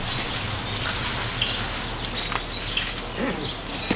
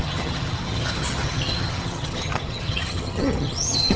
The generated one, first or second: second